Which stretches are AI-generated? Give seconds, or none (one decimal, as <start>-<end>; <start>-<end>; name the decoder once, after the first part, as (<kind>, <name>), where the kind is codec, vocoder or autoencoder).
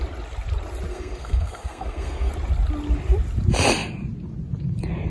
0.9-2.3 (codec, SNAC)